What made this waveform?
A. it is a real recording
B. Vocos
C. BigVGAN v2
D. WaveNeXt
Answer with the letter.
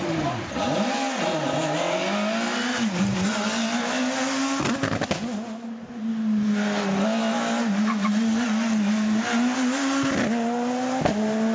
A